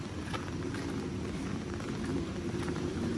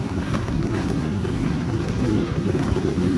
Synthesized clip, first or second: second